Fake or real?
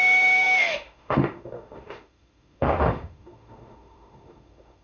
fake